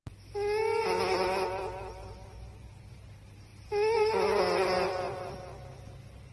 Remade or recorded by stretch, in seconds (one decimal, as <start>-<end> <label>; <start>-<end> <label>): 0.0-6.3 recorded